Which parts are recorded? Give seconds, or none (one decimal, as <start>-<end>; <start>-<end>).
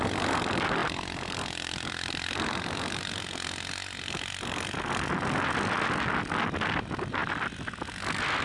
0.0-8.4